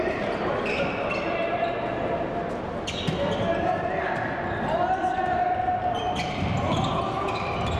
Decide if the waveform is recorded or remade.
recorded